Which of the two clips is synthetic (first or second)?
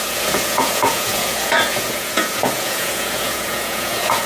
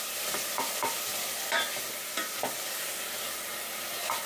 first